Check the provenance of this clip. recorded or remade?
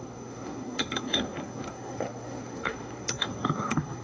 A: remade